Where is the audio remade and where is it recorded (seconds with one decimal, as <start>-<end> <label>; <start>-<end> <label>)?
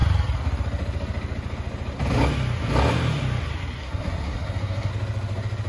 0.0-3.8 recorded; 3.8-4.9 remade; 4.9-5.7 recorded